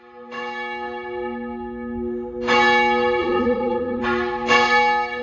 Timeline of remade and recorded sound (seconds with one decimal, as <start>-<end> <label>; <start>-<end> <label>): 0.0-3.2 recorded; 3.2-4.0 remade; 4.0-5.2 recorded